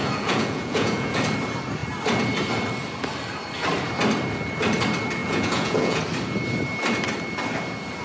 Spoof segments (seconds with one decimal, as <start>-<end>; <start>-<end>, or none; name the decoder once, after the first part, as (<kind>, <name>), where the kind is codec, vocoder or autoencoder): 0.0-1.2 (vocoder, Vocos); 5.2-6.0